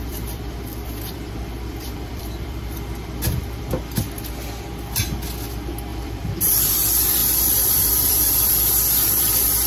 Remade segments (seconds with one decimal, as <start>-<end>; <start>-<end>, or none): 0.0-3.7; 5.9-6.7; 7.2-8.5